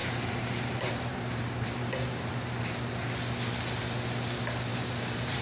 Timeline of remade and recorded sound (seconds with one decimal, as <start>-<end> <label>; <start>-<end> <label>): 0.0-3.2 remade; 3.2-4.7 recorded; 4.7-5.4 remade